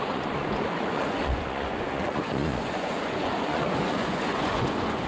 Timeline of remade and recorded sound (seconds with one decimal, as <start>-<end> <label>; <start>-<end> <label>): 0.0-5.1 remade